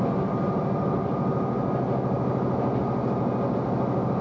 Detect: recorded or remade recorded